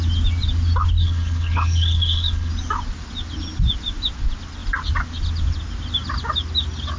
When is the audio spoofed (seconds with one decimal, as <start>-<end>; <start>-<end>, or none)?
1.0-2.5

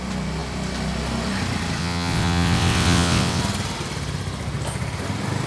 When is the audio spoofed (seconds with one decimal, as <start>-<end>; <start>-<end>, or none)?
1.8-3.4

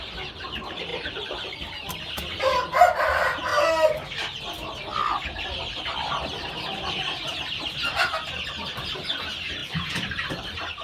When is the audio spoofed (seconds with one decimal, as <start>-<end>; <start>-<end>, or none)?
0.0-3.5; 6.5-7.3; 9.1-10.8